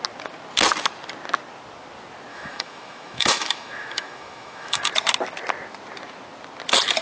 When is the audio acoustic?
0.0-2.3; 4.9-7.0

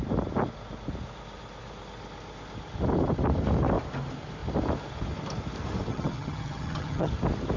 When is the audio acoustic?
0.0-5.9; 7.1-7.6

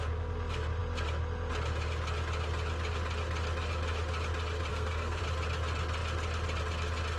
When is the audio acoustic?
0.0-4.7; 5.2-7.2

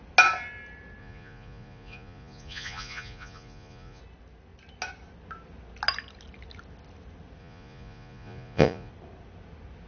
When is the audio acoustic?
0.0-1.0; 4.0-7.4; 8.9-9.9

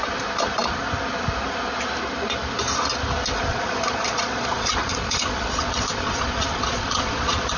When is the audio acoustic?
0.0-3.5